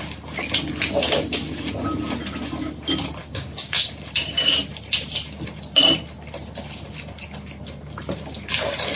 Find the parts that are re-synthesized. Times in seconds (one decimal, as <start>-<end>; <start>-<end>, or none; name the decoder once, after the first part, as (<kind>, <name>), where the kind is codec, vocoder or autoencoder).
3.2-3.9 (codec, DAC)